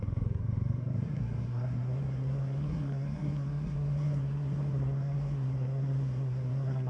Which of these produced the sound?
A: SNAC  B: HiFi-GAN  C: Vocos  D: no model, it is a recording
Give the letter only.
A